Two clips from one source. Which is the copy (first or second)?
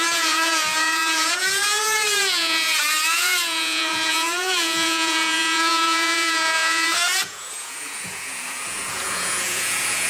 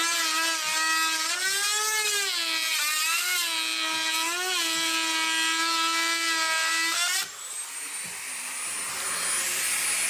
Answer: first